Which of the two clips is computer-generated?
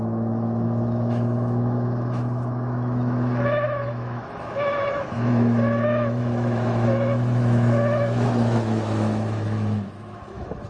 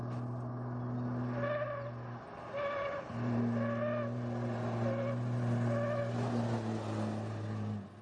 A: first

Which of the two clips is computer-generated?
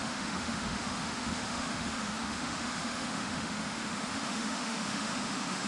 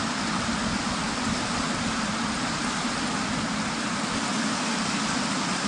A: first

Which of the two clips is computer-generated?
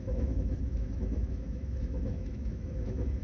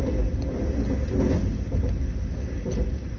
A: first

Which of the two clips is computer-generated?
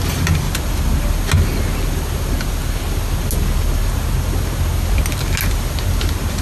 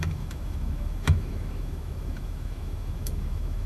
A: second